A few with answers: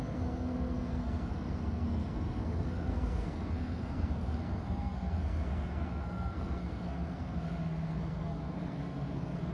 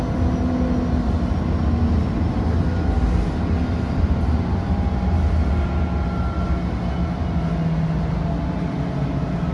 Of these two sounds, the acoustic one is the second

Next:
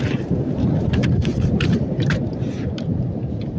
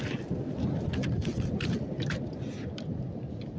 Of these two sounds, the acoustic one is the second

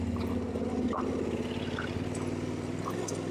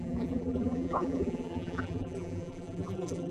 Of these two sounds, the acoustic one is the first